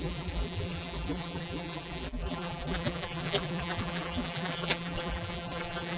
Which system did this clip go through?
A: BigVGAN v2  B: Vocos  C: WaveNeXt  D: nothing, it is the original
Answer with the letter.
A